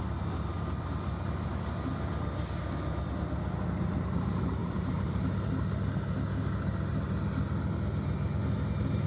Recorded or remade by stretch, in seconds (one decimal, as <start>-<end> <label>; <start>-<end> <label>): 0.0-4.6 recorded; 4.6-5.3 remade; 5.3-9.1 recorded